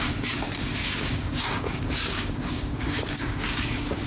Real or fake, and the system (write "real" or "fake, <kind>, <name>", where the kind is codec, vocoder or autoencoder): fake, codec, DAC